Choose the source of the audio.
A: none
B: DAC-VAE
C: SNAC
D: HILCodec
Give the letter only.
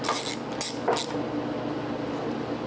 A